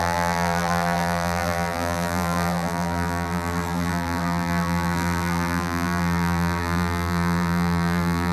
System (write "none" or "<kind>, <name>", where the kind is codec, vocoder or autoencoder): vocoder, BigVGAN v2